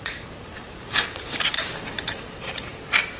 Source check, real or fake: fake